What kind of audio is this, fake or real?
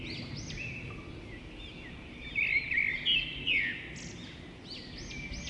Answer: real